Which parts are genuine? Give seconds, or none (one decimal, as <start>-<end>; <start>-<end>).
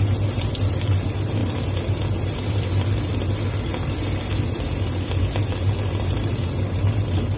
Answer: 0.0-7.4